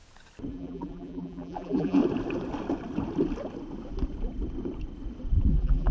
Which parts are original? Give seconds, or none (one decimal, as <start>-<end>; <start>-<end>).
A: 0.0-0.5; 2.0-5.5

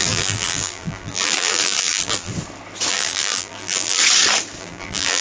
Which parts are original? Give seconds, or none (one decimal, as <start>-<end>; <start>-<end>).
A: 2.3-2.9; 4.0-4.6

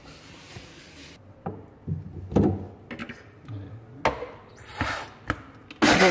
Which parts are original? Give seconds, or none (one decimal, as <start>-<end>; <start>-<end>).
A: 0.0-3.0; 3.5-6.1

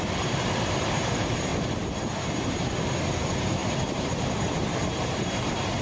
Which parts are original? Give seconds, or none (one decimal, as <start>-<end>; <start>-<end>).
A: 1.5-3.2

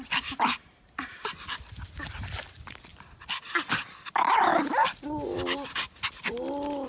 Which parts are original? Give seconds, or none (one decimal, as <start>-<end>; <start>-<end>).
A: 0.0-6.9